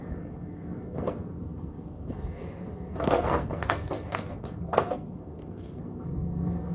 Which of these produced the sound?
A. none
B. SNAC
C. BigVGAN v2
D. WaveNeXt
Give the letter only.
B